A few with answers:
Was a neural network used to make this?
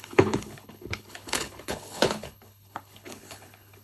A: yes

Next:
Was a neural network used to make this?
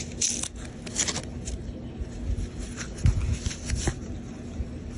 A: no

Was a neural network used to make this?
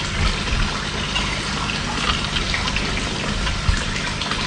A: no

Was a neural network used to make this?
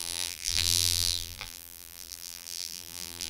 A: yes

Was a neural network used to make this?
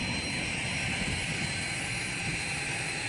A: no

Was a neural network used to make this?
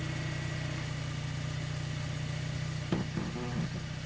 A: no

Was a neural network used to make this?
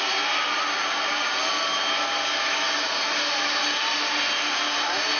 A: no